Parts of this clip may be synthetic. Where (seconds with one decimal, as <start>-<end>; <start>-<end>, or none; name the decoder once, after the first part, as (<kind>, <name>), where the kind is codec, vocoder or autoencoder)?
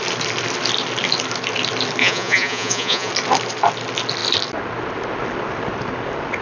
2.0-3.1 (vocoder, Vocos)